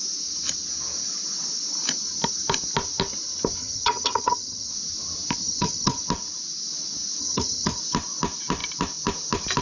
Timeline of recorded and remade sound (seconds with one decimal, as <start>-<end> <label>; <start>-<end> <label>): 0.0-3.6 recorded; 3.6-4.7 remade; 4.7-5.4 recorded; 5.4-6.0 remade; 6.0-7.2 recorded; 7.2-7.8 remade; 7.8-9.6 recorded